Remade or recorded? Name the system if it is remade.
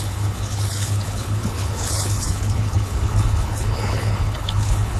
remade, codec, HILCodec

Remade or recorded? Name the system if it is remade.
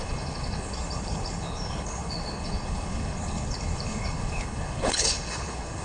remade, codec, HILCodec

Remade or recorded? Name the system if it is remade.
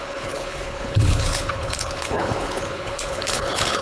remade, codec, HILCodec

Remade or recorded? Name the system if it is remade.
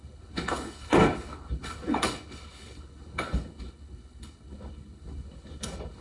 remade, codec, HILCodec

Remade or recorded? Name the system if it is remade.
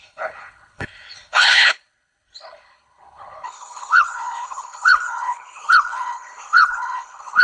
remade, codec, HILCodec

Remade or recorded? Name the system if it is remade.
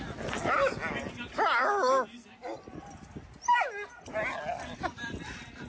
recorded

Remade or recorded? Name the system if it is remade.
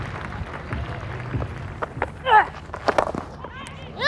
recorded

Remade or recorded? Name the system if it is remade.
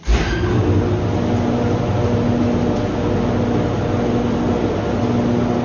recorded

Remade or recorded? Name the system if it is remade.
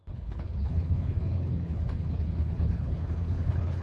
remade, codec, HILCodec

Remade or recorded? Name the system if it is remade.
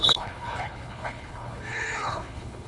remade, codec, HILCodec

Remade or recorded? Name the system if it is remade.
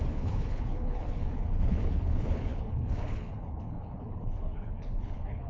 remade, codec, HILCodec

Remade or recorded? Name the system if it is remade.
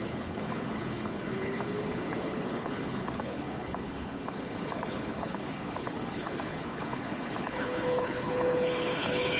remade, codec, HILCodec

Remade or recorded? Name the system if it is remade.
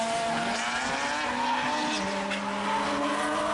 recorded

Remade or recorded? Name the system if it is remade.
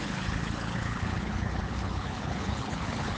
remade, codec, HILCodec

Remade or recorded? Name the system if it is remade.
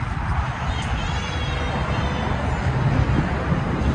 recorded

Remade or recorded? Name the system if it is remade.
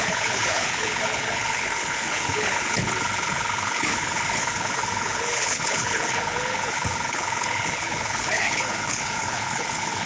remade, codec, HILCodec